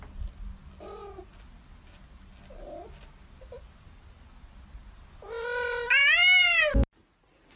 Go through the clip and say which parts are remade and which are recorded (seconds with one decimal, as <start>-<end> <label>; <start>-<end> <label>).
0.0-7.6 recorded